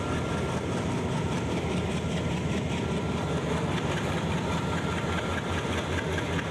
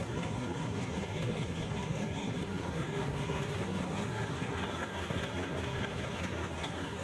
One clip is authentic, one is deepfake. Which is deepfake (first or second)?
second